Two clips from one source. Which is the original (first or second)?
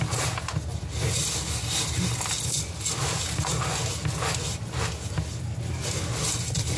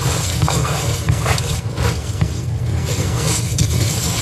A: first